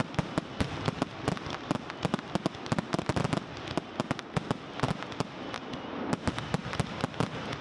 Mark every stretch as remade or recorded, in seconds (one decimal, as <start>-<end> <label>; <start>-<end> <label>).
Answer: 0.0-7.6 recorded